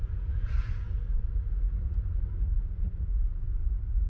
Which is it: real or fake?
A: fake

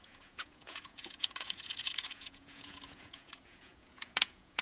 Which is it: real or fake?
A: fake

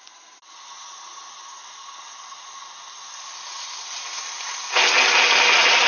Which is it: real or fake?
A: real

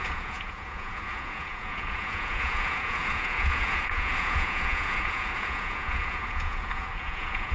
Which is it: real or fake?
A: fake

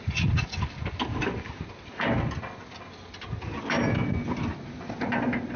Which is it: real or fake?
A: real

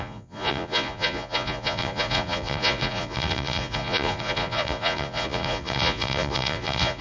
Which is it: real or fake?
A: fake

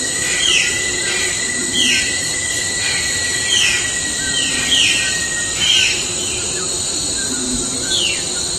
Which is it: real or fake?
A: real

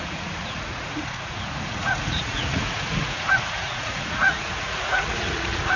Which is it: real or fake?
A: fake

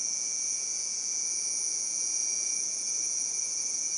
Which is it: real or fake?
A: fake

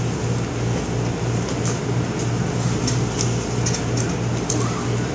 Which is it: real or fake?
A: real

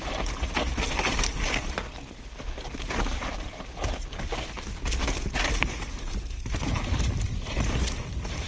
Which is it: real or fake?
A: real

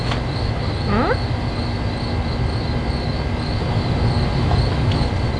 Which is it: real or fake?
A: real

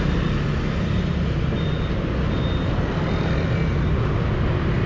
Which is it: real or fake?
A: real